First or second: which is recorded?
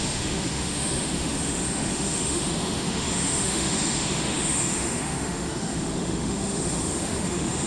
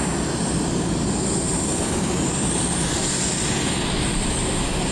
second